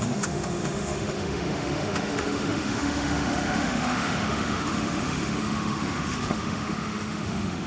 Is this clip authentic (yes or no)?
no